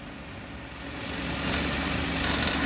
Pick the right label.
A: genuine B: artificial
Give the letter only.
A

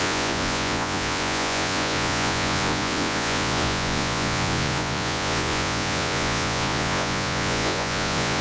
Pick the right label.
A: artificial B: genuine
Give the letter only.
A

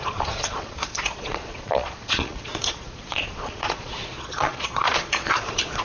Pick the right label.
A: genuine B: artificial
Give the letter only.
B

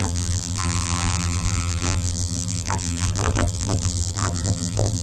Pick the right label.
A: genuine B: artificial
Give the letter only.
B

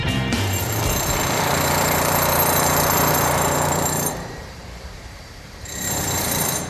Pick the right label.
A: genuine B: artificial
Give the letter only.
B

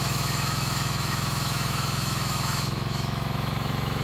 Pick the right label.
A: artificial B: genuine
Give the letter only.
A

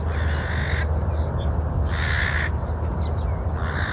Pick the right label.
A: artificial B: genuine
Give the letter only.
B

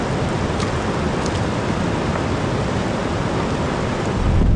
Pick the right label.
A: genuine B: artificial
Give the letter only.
A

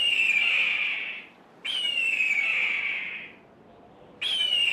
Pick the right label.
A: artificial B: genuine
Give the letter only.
B